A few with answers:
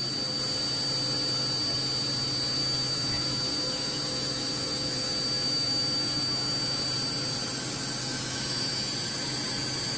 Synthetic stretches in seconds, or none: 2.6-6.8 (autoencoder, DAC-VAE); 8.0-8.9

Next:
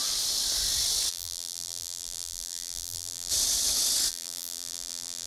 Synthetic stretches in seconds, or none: 1.1-3.3 (vocoder, BigVGAN v2); 4.1-5.3

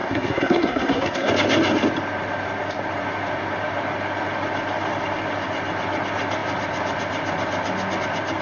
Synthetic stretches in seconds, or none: 0.0-1.3 (codec, SNAC)

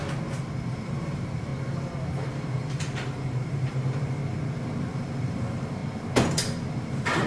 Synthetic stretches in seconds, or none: 0.7-1.5 (vocoder, BigVGAN v2); 2.3-4.2; 5.2-5.8; 6.7-7.3

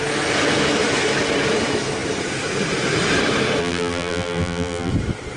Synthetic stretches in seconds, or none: 3.6-4.9 (vocoder, BigVGAN v2)

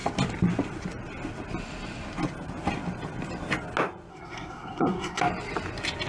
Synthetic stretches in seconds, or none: 4.1-5.2 (codec, SNAC)

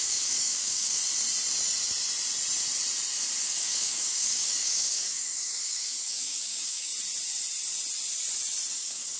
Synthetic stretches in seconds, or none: 0.0-1.0 (codec, DAC); 3.4-6.9; 8.7-9.2

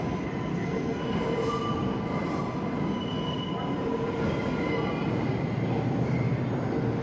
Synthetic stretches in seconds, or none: 0.5-1.0 (codec, SNAC)